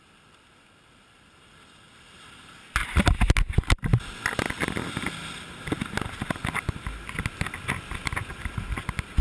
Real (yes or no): yes